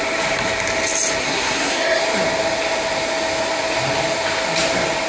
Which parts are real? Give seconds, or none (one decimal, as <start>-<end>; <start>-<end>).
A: 0.0-1.2; 2.0-5.1